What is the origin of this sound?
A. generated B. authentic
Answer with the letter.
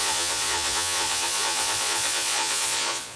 A